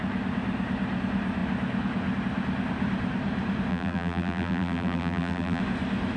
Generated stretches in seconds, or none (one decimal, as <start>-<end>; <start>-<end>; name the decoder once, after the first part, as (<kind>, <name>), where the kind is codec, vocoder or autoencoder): 3.7-5.6 (vocoder, BigVGAN v2)